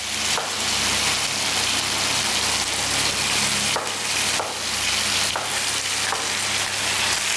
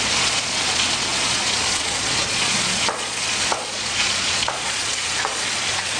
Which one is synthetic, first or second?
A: second